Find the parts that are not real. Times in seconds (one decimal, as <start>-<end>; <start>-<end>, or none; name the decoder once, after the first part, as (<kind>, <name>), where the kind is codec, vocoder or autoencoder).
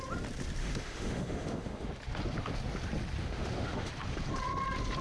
0.6-1.9 (autoencoder, DAC-VAE); 3.2-3.9